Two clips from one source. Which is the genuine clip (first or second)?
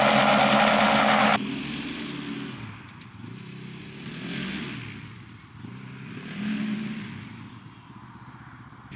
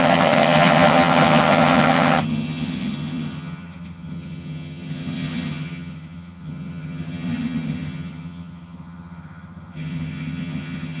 first